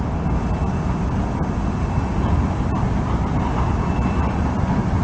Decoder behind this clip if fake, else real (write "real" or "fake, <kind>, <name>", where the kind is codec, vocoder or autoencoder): real